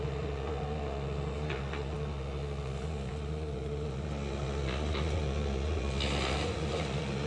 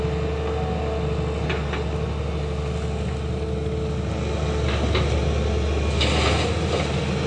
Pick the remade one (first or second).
first